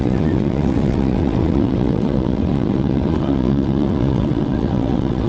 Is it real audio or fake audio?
fake